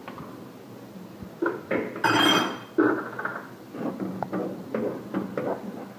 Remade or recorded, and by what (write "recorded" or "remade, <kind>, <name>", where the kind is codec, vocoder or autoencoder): recorded